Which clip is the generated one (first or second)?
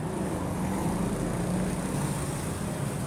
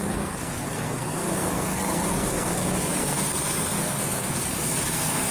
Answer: second